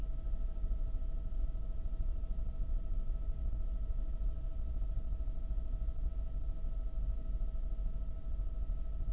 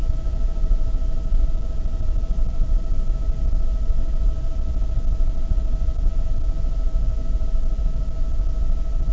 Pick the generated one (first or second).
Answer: second